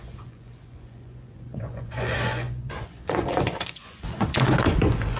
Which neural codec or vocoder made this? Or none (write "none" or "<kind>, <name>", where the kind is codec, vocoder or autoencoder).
vocoder, Vocos